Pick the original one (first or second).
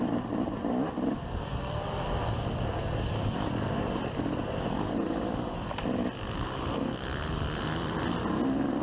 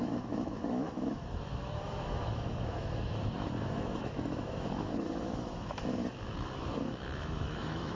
first